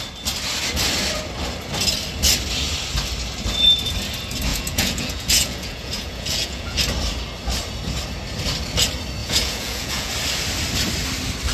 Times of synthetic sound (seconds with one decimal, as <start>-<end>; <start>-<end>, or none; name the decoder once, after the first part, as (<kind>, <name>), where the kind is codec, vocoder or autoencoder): 4.5-6.8 (vocoder, Vocos); 9.2-10.1